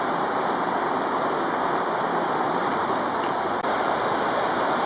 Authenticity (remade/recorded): recorded